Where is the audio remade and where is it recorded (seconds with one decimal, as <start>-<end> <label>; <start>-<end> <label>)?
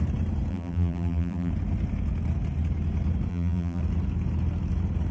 0.0-0.5 recorded; 0.5-1.5 remade; 1.5-3.3 recorded; 3.3-3.8 remade; 3.8-5.1 recorded